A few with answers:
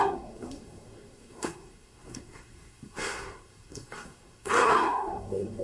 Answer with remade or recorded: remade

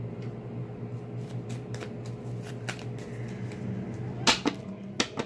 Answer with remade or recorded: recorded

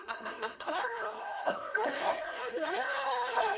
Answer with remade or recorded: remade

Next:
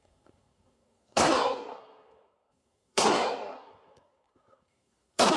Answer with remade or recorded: remade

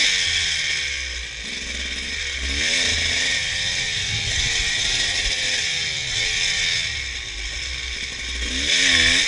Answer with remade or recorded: recorded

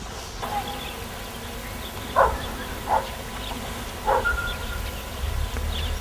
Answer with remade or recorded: recorded